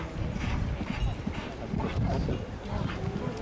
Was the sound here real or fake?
real